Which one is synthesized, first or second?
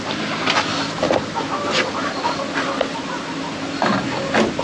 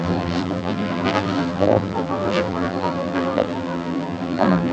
second